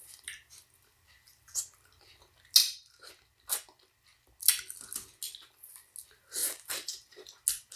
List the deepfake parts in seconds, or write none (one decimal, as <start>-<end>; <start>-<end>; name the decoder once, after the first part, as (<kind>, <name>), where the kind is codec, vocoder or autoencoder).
2.6-3.1 (vocoder, BigVGAN v2); 6.4-7.3